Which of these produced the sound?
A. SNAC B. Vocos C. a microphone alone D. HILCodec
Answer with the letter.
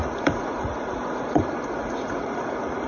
B